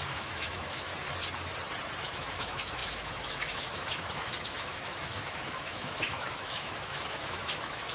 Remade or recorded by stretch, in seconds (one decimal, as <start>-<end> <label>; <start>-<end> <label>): 0.0-0.9 remade; 0.9-2.0 recorded; 2.0-7.9 remade